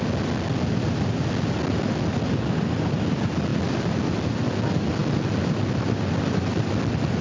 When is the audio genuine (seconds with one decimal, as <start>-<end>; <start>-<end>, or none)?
0.0-7.2